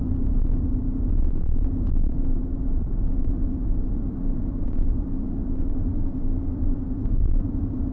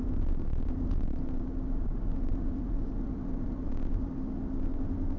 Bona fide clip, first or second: second